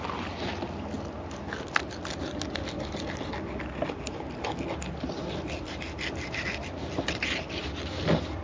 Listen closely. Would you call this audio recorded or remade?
recorded